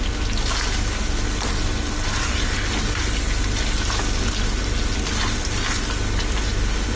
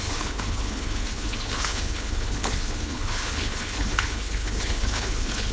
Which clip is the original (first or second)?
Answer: first